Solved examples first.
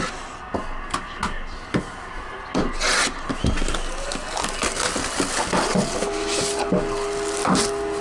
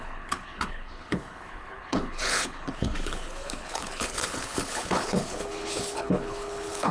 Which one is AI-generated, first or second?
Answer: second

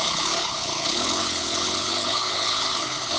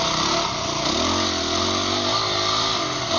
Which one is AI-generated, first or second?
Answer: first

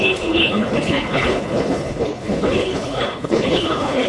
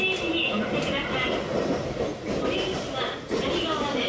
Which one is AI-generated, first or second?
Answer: first